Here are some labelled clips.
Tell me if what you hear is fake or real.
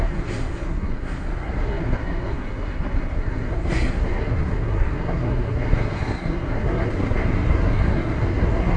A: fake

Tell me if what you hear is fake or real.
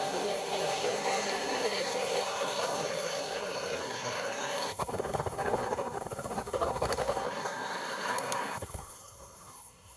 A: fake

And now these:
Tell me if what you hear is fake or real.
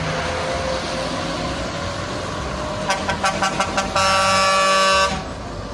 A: real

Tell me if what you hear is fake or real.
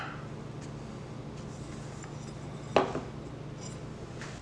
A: real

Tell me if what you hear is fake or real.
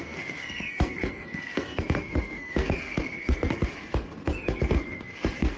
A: fake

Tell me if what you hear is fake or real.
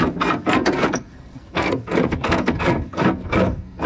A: fake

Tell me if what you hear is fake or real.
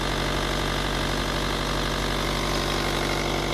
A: real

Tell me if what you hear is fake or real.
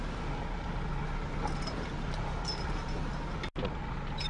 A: real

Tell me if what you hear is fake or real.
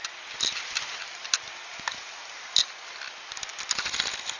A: real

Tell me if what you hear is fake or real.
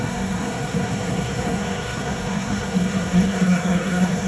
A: fake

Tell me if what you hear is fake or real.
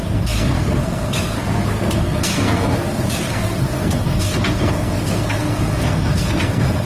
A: fake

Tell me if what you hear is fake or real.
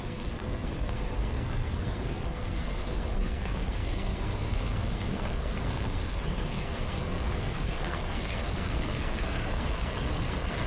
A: fake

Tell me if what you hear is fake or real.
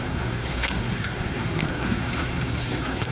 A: fake